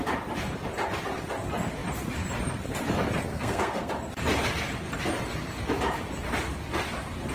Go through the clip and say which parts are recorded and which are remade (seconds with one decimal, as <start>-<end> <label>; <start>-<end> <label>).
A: 0.0-3.3 recorded; 3.3-3.9 remade; 3.9-7.3 recorded